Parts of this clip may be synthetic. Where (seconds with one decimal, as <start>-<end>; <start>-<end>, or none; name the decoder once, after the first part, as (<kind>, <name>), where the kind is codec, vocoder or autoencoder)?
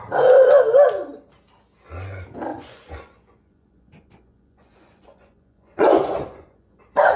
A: 2.5-6.8 (vocoder, Vocos)